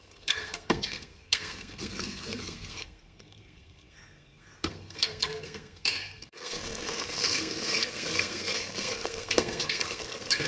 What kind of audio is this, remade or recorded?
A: remade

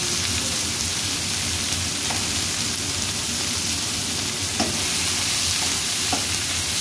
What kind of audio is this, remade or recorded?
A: recorded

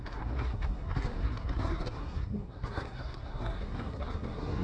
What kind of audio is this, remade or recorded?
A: remade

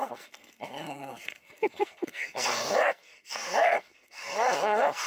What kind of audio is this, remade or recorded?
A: remade